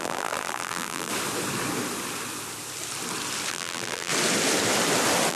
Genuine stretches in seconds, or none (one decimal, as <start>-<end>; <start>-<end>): 1.1-3.5; 4.1-5.3